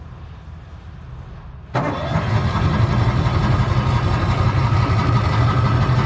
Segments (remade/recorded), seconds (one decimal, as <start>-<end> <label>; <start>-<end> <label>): 0.0-6.1 recorded